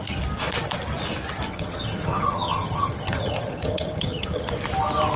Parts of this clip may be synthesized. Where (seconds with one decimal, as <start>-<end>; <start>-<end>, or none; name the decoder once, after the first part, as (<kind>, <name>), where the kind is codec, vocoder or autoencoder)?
1.5-4.5 (vocoder, HiFi-GAN)